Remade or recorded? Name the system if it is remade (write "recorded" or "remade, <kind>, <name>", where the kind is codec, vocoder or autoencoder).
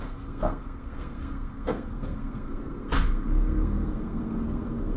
remade, codec, SNAC